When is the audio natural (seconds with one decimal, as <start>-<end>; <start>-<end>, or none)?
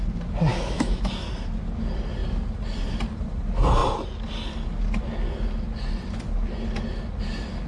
0.0-0.5; 1.0-7.7